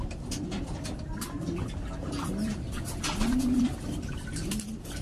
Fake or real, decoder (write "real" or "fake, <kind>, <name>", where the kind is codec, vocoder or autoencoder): fake, vocoder, BigVGAN v2